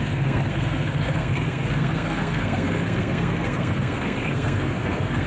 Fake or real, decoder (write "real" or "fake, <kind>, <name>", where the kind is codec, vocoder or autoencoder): fake, codec, SNAC